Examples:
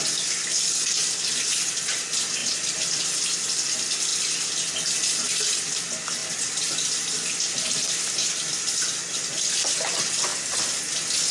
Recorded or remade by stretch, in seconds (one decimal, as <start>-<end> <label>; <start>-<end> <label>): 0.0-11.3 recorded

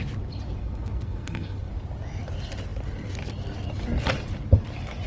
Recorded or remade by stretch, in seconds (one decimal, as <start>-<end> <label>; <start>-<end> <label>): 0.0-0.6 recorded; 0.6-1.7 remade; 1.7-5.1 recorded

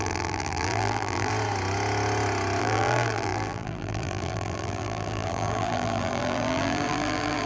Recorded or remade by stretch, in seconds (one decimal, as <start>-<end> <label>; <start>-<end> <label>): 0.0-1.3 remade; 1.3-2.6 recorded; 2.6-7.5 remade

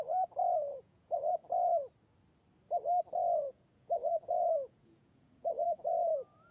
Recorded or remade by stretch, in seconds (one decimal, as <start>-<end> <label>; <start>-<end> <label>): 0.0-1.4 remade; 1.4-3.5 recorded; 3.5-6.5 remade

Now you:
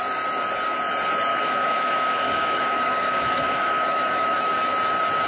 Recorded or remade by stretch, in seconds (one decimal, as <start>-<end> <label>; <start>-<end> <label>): 0.0-1.3 recorded; 1.3-4.5 remade; 4.5-5.3 recorded

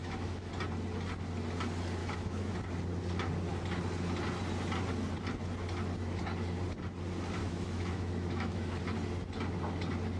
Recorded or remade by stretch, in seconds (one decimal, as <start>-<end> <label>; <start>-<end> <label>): 0.0-0.5 remade; 0.5-2.0 recorded; 2.0-2.5 remade; 2.5-7.4 recorded; 7.4-8.8 remade; 8.8-10.2 recorded